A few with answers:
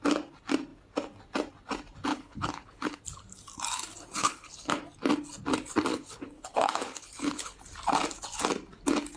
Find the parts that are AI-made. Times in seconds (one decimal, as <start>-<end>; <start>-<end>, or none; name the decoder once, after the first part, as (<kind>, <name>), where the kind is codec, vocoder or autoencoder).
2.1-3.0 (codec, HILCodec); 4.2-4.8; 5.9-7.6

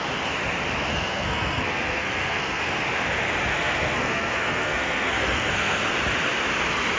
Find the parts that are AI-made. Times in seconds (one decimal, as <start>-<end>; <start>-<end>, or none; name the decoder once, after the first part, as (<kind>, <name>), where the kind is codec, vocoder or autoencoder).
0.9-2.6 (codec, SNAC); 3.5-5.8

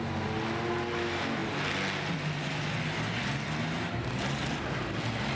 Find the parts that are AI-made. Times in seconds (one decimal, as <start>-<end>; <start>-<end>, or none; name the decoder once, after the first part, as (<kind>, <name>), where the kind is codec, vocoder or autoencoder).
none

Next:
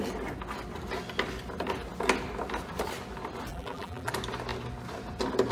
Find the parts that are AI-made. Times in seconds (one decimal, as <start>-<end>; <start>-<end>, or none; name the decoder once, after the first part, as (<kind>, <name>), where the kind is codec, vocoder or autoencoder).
3.5-4.1 (vocoder, BigVGAN v2)